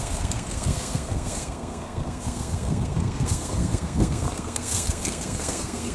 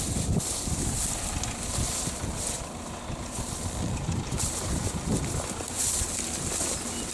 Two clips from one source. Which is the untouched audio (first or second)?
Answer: second